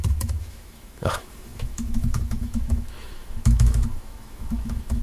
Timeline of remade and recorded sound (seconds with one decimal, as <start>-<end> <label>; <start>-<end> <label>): 0.0-5.0 remade